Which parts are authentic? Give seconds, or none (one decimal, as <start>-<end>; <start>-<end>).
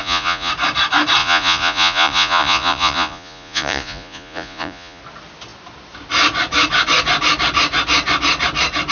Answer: 0.5-1.2; 5.0-8.9